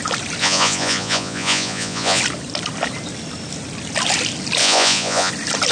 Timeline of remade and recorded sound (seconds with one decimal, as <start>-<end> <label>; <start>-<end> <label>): 0.0-0.4 recorded; 0.4-2.2 remade; 2.2-4.6 recorded; 4.6-5.3 remade; 5.3-5.7 recorded